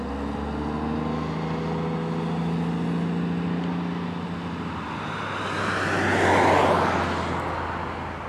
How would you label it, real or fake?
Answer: real